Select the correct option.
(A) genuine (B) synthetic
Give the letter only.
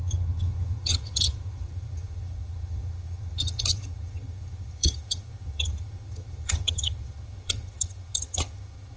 B